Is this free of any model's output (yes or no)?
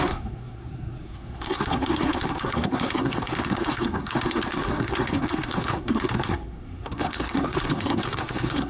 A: no